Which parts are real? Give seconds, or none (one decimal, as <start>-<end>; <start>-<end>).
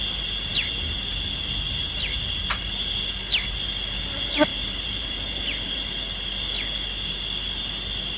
0.0-4.5; 5.9-8.2